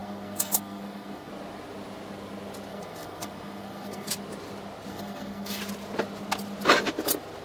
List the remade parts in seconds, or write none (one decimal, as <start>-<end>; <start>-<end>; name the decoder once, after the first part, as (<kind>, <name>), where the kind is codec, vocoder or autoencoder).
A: 0.0-1.3 (codec, SNAC); 2.7-4.1; 4.9-5.6